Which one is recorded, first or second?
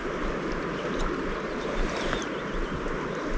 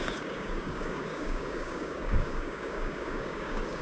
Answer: first